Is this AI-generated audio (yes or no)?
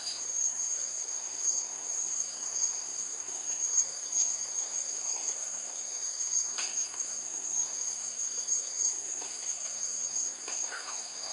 yes